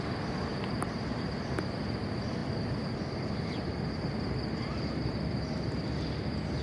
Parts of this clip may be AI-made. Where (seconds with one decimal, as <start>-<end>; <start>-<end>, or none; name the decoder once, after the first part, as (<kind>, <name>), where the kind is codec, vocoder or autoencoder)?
none